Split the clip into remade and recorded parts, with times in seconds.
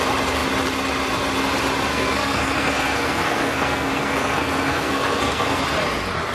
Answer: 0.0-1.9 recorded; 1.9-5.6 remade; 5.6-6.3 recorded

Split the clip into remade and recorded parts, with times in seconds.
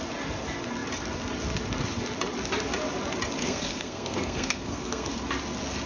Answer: 0.0-3.4 recorded; 3.4-5.2 remade; 5.2-5.9 recorded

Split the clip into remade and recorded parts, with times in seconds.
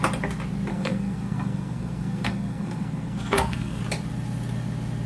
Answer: 0.0-0.7 recorded; 0.7-3.8 remade; 3.8-5.1 recorded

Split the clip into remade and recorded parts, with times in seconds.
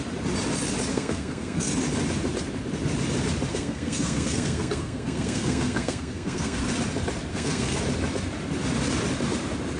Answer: 0.0-0.9 recorded; 0.9-1.7 remade; 1.7-3.5 recorded; 3.5-6.7 remade; 6.7-7.3 recorded; 7.3-7.8 remade; 7.8-9.8 recorded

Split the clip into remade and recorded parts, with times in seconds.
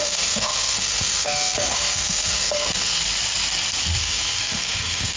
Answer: 0.0-3.0 remade; 3.0-4.0 recorded; 4.0-5.2 remade